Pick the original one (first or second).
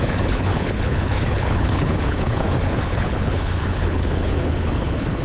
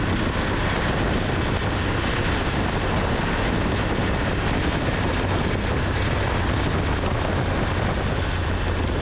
second